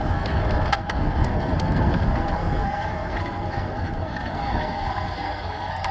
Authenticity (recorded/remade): remade